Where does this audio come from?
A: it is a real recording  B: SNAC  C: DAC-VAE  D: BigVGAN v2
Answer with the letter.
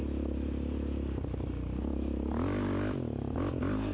A